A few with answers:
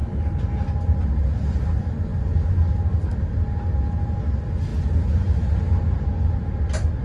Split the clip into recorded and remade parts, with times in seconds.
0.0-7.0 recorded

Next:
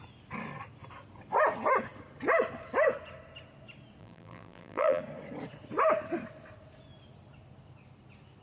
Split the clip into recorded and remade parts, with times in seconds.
0.0-4.0 recorded; 4.0-5.0 remade; 5.0-8.4 recorded

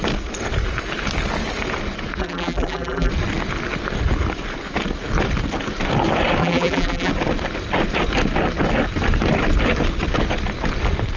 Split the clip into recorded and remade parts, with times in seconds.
0.0-2.2 recorded; 2.2-3.1 remade; 3.1-6.4 recorded; 6.4-7.1 remade; 7.1-11.2 recorded

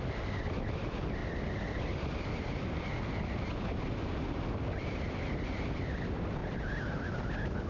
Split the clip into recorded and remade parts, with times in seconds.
0.0-6.4 recorded; 6.4-7.1 remade; 7.1-7.7 recorded

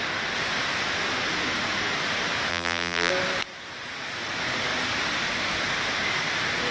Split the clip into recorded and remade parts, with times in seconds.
0.0-2.5 recorded; 2.5-3.1 remade; 3.1-6.7 recorded

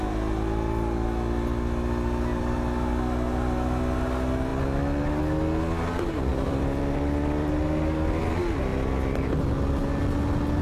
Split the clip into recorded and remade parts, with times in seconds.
0.0-2.3 recorded; 2.3-3.0 remade; 3.0-6.3 recorded; 6.3-8.2 remade; 8.2-10.6 recorded